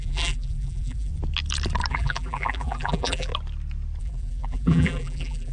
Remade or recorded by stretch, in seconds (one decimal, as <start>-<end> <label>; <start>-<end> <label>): 0.0-1.1 remade; 1.1-1.9 recorded; 1.9-3.3 remade; 3.3-4.0 recorded; 4.0-5.5 remade